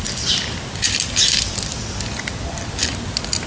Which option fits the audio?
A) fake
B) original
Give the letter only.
B